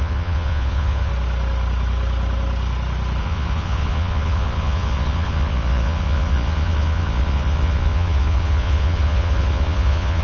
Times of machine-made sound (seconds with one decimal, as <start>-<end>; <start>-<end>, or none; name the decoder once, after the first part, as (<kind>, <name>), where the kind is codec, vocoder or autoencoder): 0.0-1.1 (vocoder, Vocos); 3.2-10.2